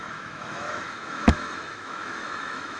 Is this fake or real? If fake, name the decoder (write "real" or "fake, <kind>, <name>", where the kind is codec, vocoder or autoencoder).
fake, autoencoder, DAC-VAE